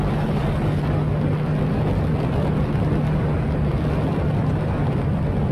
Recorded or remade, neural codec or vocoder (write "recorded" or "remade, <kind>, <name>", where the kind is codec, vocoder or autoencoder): recorded